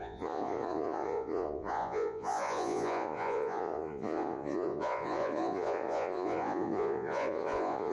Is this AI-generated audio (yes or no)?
yes